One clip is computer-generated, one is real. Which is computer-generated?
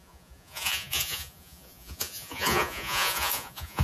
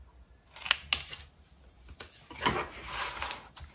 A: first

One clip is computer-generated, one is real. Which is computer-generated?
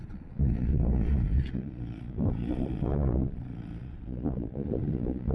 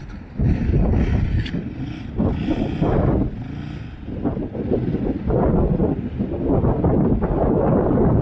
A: first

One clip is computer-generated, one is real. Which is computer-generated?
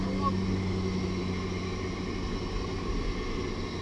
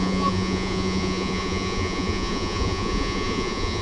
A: second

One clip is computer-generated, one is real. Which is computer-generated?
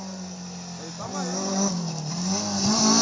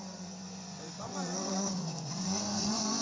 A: second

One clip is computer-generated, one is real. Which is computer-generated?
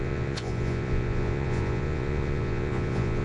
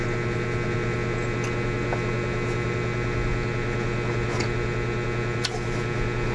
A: first